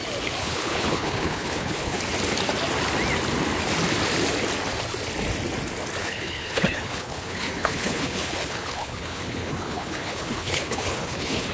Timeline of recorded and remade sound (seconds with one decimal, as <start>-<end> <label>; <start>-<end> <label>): 0.0-0.4 recorded; 0.4-2.0 remade; 2.0-6.0 recorded; 6.0-11.5 remade